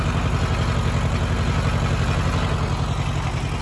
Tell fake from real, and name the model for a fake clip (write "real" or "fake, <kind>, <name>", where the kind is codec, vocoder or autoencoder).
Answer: real